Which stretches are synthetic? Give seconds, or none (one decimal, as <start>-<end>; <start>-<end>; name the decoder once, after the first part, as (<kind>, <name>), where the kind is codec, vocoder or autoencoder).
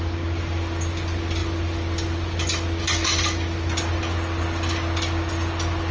none